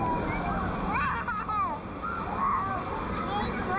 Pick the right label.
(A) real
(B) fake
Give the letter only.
A